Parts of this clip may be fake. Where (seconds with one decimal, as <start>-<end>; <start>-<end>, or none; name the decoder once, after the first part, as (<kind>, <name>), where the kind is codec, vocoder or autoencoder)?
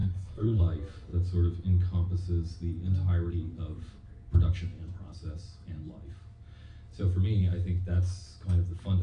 0.0-0.6 (codec, SNAC)